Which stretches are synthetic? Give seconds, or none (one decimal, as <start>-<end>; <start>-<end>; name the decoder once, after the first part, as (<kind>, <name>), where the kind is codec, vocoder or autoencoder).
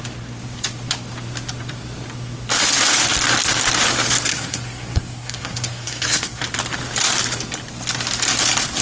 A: 4.3-6.4 (codec, SNAC)